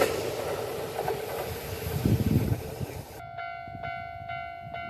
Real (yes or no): yes